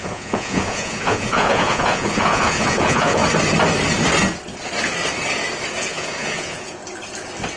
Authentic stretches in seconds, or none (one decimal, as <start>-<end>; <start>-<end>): 3.2-5.8; 6.8-7.6